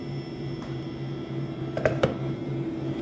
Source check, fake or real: fake